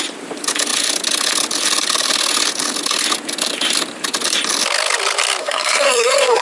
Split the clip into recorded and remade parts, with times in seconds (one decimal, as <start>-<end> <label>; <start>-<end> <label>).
0.0-5.4 recorded; 5.4-6.4 remade